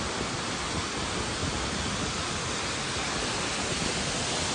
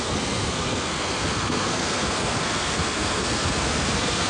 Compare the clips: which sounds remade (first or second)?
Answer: second